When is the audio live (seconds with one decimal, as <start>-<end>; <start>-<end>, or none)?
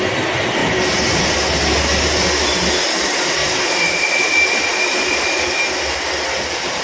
0.0-3.4; 5.6-6.8